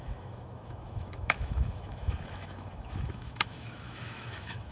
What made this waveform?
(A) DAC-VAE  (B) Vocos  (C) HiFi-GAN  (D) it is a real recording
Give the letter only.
A